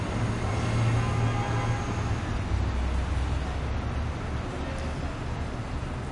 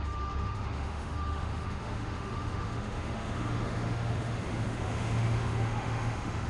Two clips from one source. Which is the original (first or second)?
first